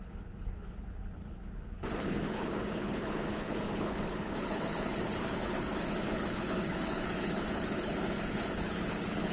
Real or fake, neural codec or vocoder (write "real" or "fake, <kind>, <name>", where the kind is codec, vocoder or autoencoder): fake, codec, HILCodec